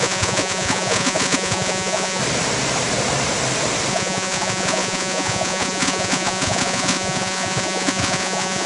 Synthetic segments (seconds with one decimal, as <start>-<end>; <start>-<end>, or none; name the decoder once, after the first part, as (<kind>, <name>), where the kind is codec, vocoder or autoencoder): 0.0-2.2 (vocoder, Vocos); 3.9-8.7